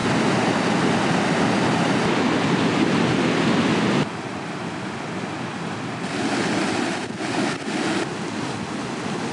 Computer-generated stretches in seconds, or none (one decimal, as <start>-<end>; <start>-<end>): none